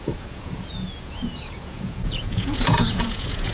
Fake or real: fake